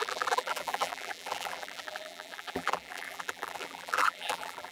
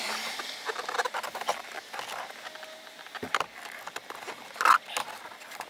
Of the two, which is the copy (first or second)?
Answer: first